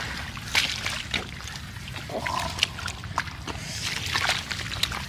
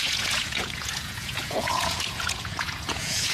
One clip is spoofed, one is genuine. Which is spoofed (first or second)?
second